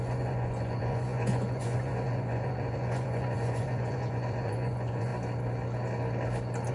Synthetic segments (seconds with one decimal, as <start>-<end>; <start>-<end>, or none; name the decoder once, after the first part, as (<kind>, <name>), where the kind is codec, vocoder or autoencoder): 0.0-5.1 (vocoder, Vocos)